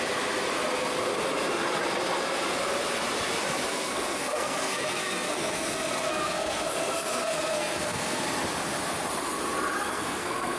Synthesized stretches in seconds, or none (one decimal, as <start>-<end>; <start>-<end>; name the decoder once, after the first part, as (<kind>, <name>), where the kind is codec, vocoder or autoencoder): 3.7-8.2 (codec, SNAC); 9.8-10.6